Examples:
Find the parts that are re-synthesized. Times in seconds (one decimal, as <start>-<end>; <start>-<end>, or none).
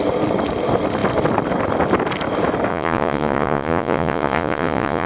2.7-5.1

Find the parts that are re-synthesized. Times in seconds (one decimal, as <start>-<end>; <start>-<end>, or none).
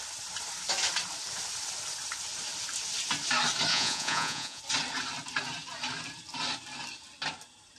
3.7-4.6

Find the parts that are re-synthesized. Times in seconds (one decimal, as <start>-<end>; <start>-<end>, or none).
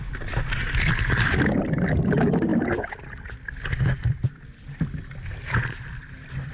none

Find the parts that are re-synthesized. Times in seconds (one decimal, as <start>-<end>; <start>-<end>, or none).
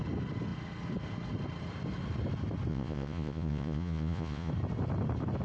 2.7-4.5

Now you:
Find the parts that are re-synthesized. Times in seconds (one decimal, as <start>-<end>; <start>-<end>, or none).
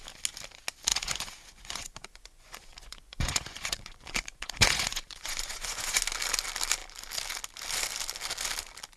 0.9-6.0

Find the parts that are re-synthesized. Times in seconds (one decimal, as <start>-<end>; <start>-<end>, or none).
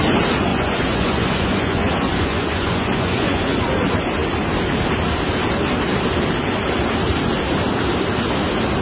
0.5-3.6